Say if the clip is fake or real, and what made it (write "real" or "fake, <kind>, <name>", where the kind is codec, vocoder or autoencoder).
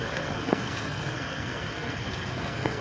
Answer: fake, codec, SNAC